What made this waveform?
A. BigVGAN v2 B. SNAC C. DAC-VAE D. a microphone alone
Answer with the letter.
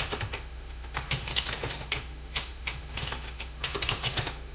C